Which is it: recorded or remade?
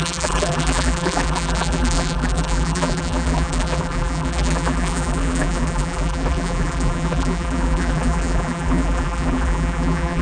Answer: remade